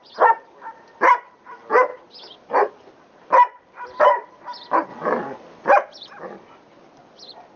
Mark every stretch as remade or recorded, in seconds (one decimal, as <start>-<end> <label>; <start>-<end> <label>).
0.0-7.6 recorded